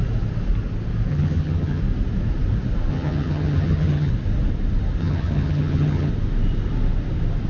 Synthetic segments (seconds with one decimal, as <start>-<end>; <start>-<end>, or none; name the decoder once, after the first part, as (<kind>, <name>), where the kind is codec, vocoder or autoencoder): 1.1-1.8 (vocoder, HiFi-GAN); 2.9-4.1; 5.0-6.1